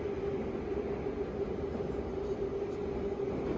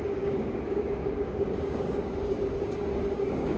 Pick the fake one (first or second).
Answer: second